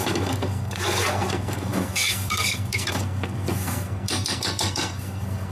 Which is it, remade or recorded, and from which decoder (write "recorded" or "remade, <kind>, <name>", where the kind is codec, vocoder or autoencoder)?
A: remade, codec, SNAC